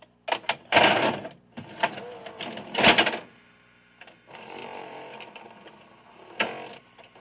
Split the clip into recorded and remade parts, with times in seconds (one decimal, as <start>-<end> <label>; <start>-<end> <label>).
0.0-4.6 recorded; 4.6-5.7 remade; 5.7-7.2 recorded